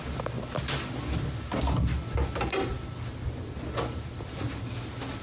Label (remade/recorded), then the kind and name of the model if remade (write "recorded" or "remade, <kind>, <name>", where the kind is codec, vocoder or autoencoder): recorded